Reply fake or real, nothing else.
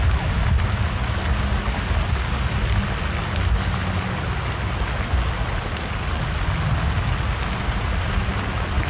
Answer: real